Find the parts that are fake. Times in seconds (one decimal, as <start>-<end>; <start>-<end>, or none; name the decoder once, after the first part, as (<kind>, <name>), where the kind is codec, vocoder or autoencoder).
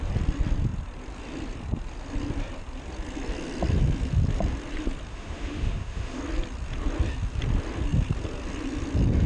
5.1-6.2 (autoencoder, DAC-VAE)